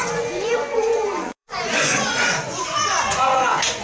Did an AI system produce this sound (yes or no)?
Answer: yes